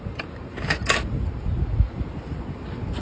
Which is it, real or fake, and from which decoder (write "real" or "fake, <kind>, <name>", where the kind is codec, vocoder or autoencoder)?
real